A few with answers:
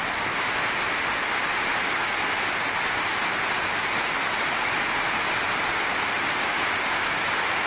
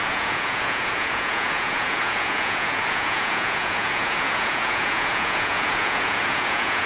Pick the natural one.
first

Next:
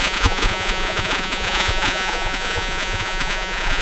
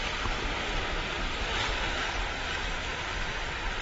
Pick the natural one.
second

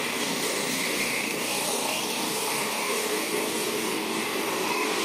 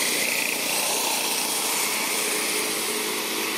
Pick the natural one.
second